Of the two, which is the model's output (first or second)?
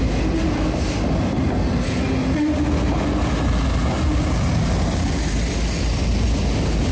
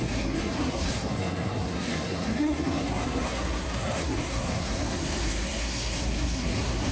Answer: second